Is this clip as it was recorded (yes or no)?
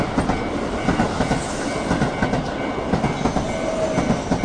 yes